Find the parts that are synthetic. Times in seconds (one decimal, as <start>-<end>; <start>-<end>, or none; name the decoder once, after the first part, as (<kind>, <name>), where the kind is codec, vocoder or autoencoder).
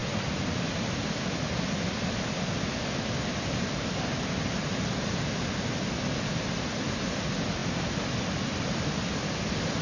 none